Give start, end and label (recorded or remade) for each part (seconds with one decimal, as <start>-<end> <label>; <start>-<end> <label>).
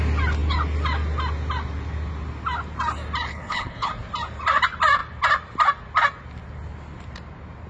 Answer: 0.0-3.3 recorded; 3.3-3.9 remade; 3.9-7.7 recorded